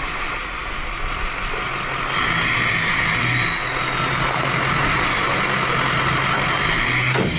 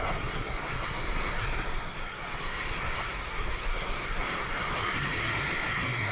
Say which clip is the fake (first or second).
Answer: second